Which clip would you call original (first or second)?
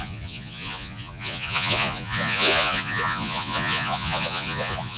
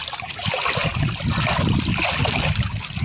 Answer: second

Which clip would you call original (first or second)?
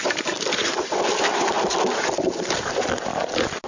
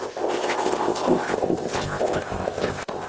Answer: first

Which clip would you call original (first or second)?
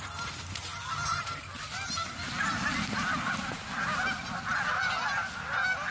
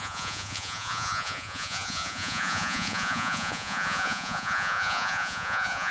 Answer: first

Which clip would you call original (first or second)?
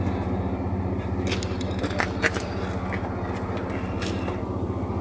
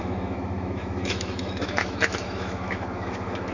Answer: first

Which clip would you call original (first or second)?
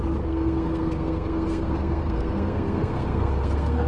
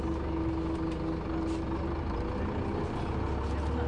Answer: second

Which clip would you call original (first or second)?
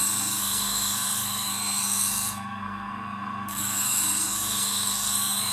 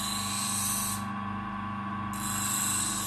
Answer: second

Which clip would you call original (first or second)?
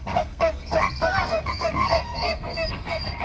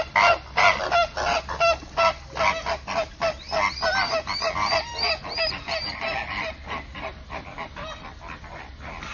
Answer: second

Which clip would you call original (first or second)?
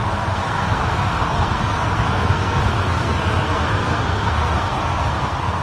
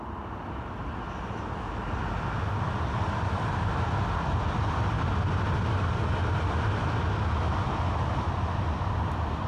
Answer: second